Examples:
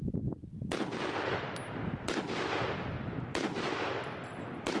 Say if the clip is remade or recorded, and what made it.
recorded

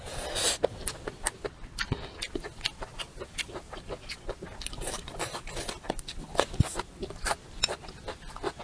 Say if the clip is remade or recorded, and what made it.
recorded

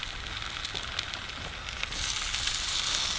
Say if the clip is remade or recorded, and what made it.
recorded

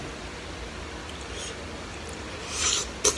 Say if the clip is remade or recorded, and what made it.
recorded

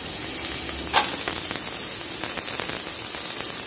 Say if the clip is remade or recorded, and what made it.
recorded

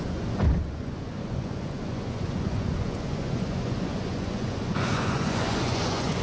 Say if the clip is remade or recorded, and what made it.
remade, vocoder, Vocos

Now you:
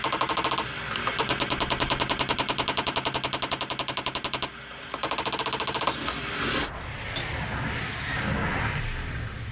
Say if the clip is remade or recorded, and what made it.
recorded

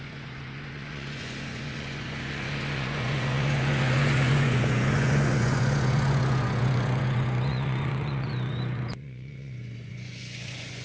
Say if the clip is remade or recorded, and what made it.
remade, vocoder, Vocos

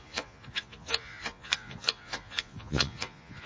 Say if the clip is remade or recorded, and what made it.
remade, vocoder, Vocos